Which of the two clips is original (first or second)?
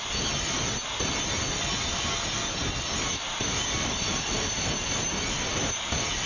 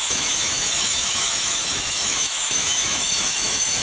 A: first